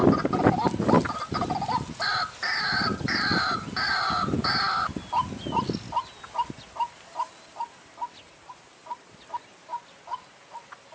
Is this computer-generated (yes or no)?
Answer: no